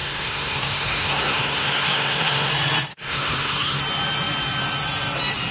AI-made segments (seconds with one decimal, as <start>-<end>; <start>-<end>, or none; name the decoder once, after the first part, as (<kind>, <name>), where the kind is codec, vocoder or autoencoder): 0.0-2.5 (codec, SNAC); 2.9-3.8